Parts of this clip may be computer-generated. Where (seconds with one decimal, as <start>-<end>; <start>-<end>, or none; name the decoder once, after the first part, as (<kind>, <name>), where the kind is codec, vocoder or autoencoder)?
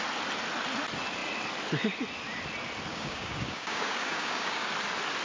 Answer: 2.9-4.7 (codec, DAC)